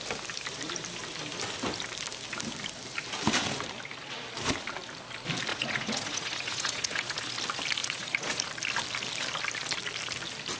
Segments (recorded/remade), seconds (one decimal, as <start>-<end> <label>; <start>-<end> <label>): 0.0-5.5 recorded; 5.5-7.2 remade; 7.2-7.8 recorded; 7.8-8.5 remade; 8.5-10.6 recorded